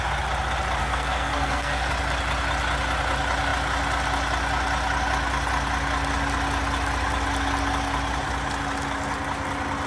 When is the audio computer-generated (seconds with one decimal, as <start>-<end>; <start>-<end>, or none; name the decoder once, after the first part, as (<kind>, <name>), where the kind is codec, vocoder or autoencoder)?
0.8-1.9 (codec, SNAC)